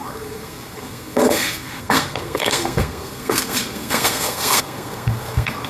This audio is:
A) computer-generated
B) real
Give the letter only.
A